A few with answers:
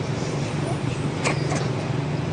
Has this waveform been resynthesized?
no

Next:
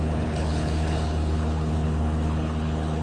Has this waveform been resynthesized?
yes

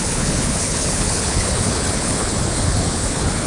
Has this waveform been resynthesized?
yes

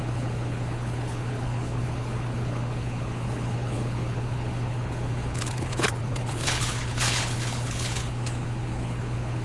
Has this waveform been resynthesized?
yes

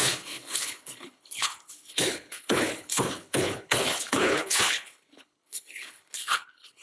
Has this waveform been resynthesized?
yes